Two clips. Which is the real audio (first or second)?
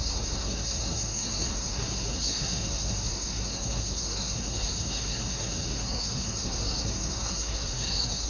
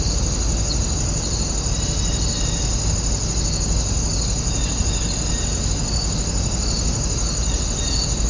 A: second